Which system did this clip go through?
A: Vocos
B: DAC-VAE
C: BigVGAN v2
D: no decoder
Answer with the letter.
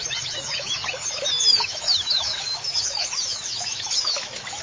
B